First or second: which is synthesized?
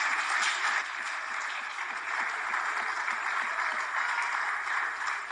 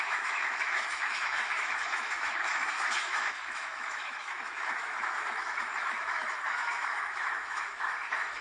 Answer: second